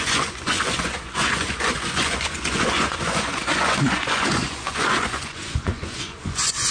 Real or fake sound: fake